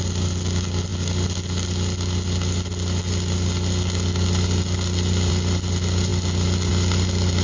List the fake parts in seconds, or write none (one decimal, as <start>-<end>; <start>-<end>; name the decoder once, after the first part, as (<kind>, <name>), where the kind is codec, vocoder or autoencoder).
none